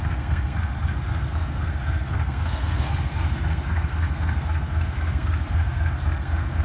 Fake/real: fake